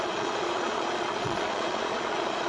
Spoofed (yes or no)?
yes